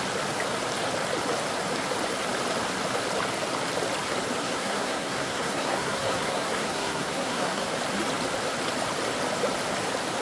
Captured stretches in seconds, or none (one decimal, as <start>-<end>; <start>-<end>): 0.0-4.4; 7.7-10.2